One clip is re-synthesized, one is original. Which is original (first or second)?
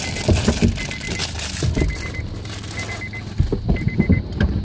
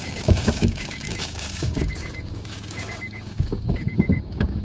first